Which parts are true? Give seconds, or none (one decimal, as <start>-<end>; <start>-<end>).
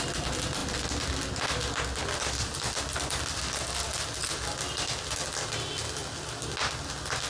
0.0-7.3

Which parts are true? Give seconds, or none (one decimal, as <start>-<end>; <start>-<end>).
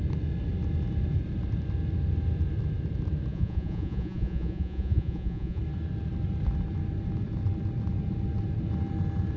0.0-3.3; 5.6-9.4